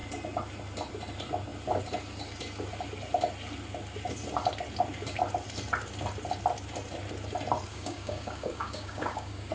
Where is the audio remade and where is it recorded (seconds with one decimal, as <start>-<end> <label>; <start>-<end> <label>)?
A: 0.0-7.7 recorded; 7.7-9.5 remade